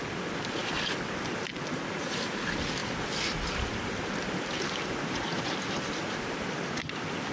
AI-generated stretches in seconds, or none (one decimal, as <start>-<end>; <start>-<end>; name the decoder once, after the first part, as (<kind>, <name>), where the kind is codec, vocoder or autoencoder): none